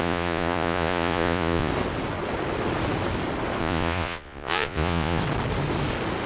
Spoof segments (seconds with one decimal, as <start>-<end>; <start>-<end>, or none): 0.0-1.7; 3.6-5.2